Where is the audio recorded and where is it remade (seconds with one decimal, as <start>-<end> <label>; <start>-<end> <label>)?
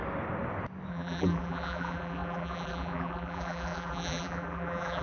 0.0-0.9 recorded; 0.9-5.0 remade